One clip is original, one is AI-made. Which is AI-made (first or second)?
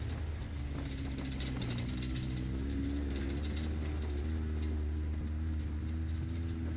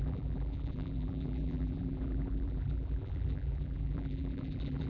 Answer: second